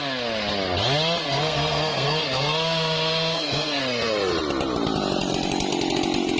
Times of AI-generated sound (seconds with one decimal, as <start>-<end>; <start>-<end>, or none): 1.2-3.8